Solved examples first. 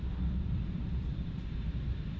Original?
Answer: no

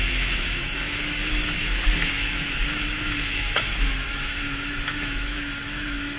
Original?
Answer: no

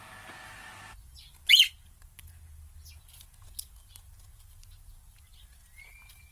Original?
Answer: yes